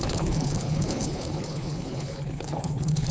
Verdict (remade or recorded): remade